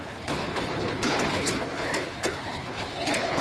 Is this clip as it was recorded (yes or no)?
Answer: no